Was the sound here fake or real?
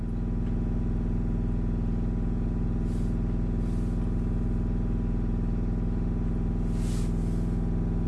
real